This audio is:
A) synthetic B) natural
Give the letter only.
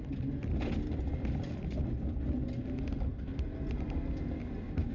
B